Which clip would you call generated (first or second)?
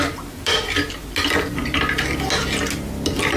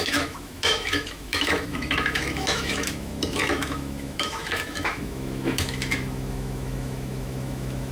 second